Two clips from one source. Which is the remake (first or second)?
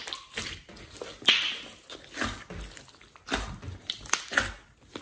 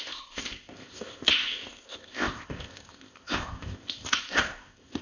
second